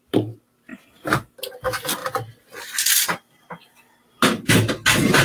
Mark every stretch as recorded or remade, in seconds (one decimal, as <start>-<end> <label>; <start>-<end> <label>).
0.0-0.7 remade; 0.7-1.5 recorded; 1.5-2.0 remade; 2.0-2.6 recorded; 2.6-3.6 remade; 3.6-5.2 recorded

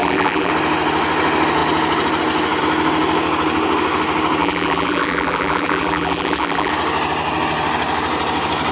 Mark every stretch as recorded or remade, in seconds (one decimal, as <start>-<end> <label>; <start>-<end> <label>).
0.0-0.5 remade; 0.5-4.4 recorded; 4.4-6.7 remade; 6.7-8.7 recorded

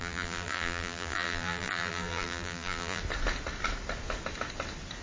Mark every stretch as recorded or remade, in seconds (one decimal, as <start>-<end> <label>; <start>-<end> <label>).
0.0-3.0 remade; 3.0-5.0 recorded

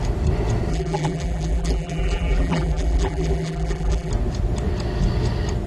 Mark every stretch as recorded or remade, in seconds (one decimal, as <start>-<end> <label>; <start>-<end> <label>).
0.0-0.7 recorded; 0.7-4.1 remade; 4.1-5.7 recorded

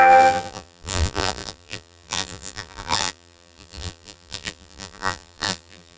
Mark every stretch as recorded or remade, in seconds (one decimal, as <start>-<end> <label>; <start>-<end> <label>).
0.0-6.0 remade

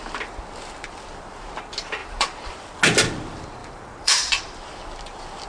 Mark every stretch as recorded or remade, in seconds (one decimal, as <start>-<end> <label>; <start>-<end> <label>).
0.0-2.0 recorded; 2.0-2.7 remade; 2.7-3.6 recorded; 3.6-4.4 remade; 4.4-5.5 recorded